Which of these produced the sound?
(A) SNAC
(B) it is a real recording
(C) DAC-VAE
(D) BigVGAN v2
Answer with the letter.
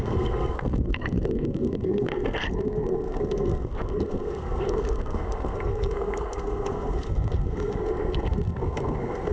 A